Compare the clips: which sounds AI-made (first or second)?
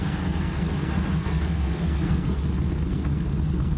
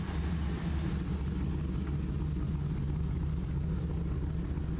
first